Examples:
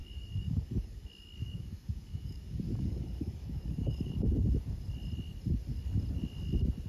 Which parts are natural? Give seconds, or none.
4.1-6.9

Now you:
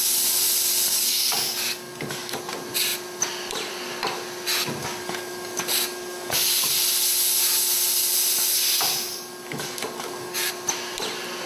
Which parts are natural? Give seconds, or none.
0.0-0.9; 2.4-4.8; 6.7-9.0; 10.5-11.5

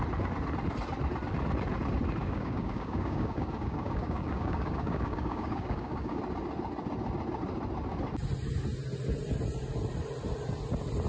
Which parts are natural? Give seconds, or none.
0.0-2.2; 6.2-11.1

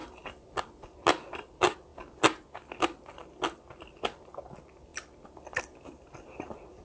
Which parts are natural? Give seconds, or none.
0.0-6.8

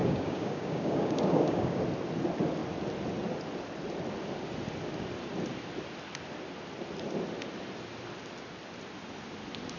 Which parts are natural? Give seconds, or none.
1.8-9.8

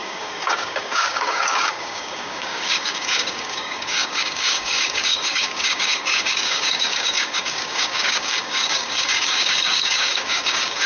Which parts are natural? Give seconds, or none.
none

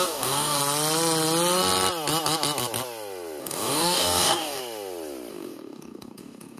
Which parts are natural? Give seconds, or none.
0.6-3.4; 4.6-5.3

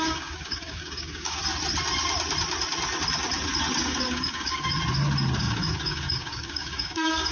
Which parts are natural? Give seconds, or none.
1.4-3.8; 4.7-5.4